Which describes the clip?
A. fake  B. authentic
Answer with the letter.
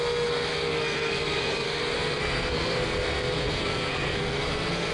A